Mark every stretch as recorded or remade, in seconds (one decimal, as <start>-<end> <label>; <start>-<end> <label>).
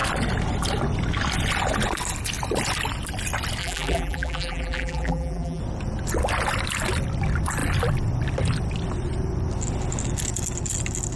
0.0-3.6 recorded; 3.6-5.6 remade; 5.6-11.2 recorded